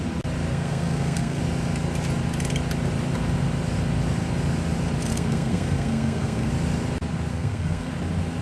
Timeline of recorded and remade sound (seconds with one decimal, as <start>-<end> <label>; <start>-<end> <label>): 0.0-0.5 recorded; 0.5-1.4 remade; 1.4-5.1 recorded; 5.1-6.5 remade; 6.5-7.3 recorded; 7.3-7.9 remade; 7.9-8.4 recorded